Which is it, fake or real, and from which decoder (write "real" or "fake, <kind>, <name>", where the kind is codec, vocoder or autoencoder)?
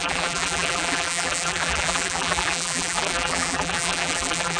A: fake, vocoder, BigVGAN v2